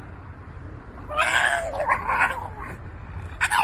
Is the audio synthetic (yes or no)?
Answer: no